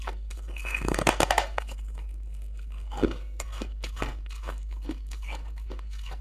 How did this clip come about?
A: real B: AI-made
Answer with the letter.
B